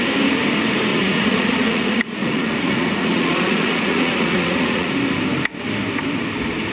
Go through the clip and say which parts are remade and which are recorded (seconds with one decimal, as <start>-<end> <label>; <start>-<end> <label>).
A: 0.0-0.9 recorded; 0.9-4.9 remade; 4.9-6.7 recorded